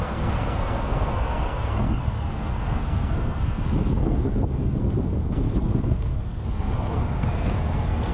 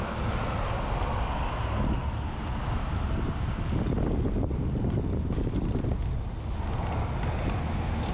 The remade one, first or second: first